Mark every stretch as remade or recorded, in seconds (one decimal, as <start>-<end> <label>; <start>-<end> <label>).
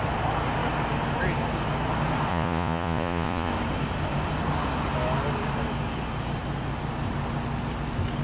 0.0-2.3 recorded; 2.3-3.5 remade; 3.5-8.2 recorded